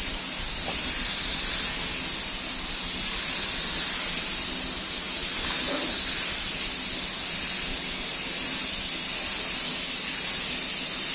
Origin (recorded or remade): recorded